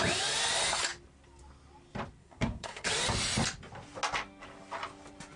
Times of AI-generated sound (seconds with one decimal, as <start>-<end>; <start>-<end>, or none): 2.2-2.9